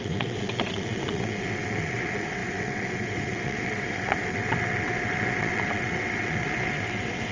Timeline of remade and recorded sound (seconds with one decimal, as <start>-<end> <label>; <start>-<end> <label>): 0.0-7.3 remade

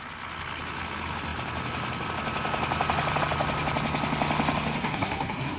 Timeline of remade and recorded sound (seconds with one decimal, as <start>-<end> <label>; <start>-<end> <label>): 0.0-4.8 recorded; 4.8-5.6 remade

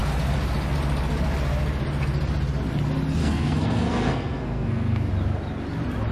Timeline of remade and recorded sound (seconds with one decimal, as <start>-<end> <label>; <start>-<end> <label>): 0.0-3.2 recorded; 3.2-5.1 remade; 5.1-6.1 recorded